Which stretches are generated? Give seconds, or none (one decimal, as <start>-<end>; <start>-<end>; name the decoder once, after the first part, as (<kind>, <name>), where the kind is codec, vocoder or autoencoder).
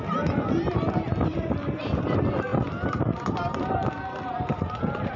1.3-1.9 (vocoder, BigVGAN v2)